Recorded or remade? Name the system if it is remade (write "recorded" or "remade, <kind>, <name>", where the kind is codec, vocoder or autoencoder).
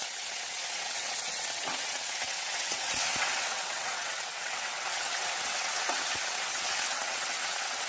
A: remade, vocoder, WaveNeXt